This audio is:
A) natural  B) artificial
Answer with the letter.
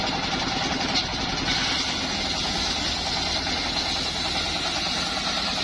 A